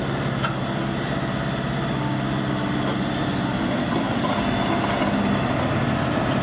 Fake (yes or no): no